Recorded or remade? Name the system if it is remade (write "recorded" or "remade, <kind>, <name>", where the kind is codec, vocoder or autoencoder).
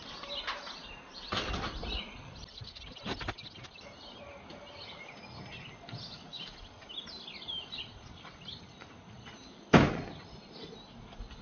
recorded